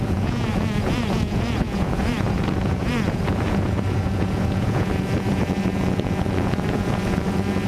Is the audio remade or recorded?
remade